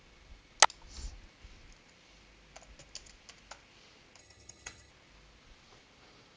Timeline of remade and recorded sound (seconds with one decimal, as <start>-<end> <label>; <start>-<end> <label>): 0.0-4.2 recorded; 4.2-4.9 remade; 4.9-6.4 recorded